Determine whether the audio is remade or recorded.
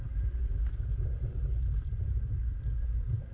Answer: recorded